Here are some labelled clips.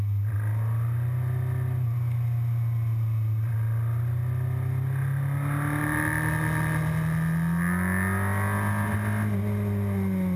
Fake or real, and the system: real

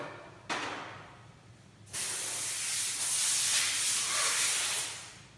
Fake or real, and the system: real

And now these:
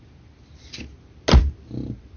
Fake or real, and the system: real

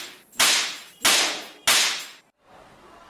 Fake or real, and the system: real